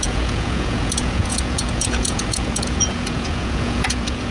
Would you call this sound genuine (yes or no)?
no